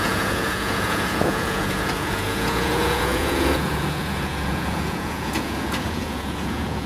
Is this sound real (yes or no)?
no